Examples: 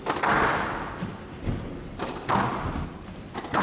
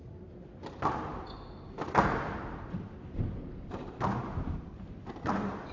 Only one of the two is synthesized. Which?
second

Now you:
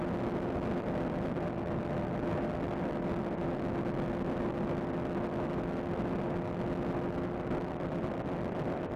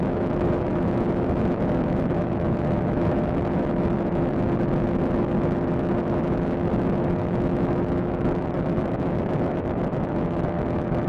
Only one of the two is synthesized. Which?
second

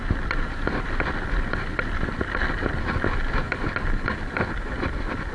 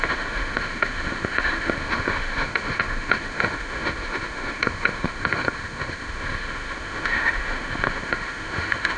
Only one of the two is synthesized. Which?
second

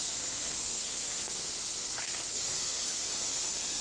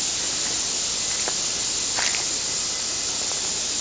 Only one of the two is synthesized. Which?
first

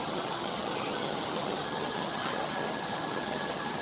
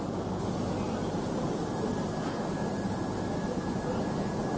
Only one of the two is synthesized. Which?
first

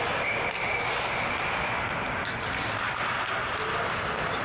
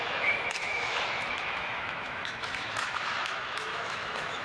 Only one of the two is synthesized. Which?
second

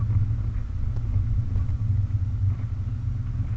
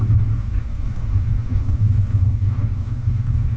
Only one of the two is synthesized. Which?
second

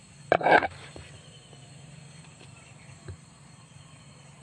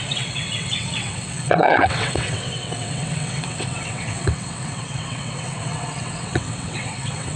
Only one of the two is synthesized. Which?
second